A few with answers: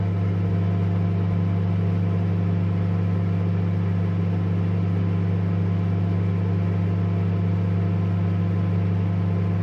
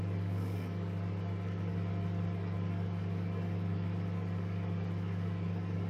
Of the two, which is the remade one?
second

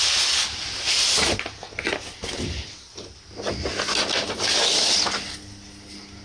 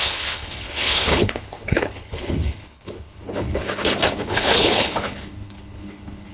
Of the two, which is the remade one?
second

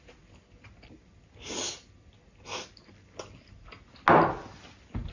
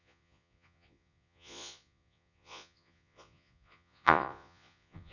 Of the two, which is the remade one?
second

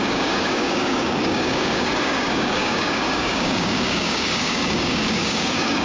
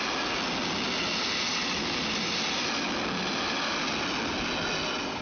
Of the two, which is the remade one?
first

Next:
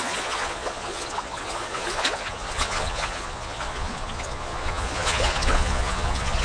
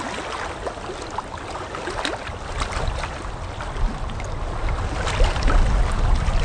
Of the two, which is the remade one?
first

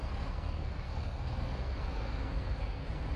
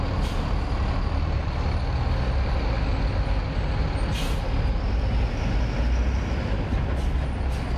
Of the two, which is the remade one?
first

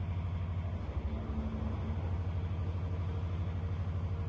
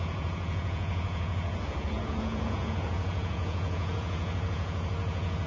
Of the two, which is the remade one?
second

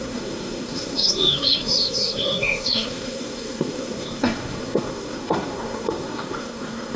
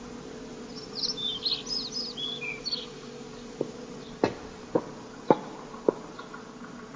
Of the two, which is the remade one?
first